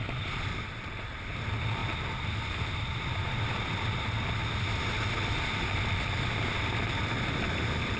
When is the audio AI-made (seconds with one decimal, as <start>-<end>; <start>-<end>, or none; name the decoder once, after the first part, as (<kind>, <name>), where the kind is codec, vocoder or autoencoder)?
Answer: none